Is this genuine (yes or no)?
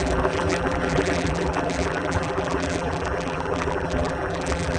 no